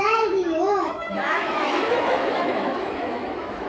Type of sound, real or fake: fake